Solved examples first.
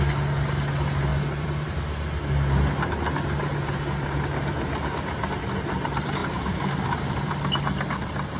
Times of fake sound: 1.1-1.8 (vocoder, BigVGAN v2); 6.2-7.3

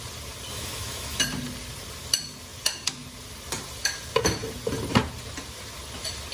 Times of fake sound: 0.5-1.2 (autoencoder, DAC-VAE)

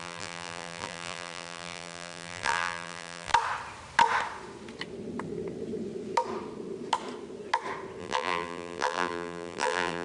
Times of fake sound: 0.0-3.3 (vocoder, BigVGAN v2); 8.0-10.0